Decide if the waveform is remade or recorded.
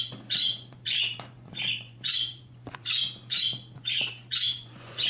remade